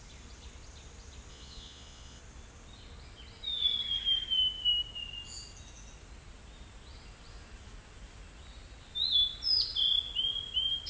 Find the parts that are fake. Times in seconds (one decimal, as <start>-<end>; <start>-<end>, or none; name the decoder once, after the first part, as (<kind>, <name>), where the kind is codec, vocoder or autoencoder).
1.3-2.2 (vocoder, Vocos)